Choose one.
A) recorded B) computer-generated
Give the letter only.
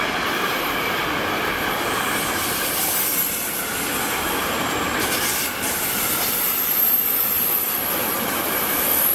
B